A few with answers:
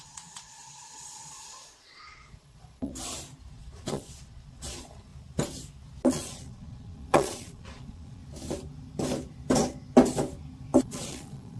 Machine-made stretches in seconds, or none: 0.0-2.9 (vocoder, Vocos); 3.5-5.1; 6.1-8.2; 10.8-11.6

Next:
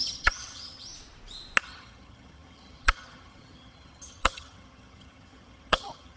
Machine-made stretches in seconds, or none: 0.0-0.9 (vocoder, HiFi-GAN); 1.6-6.2

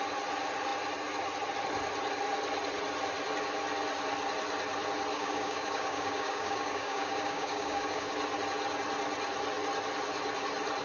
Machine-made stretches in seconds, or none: 5.1-8.1 (codec, DAC)

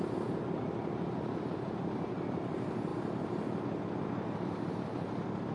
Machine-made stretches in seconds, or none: none

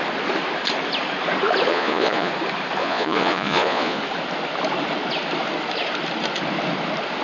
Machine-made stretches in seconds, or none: 1.7-2.3 (vocoder, Vocos); 2.8-4.0

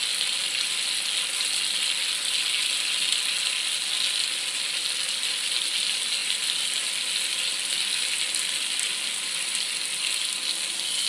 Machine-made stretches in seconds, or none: none